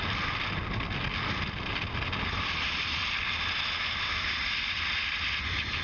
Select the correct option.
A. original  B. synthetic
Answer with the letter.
A